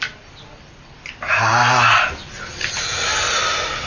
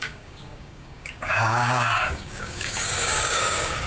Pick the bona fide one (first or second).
first